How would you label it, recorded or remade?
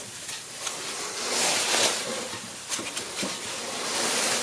recorded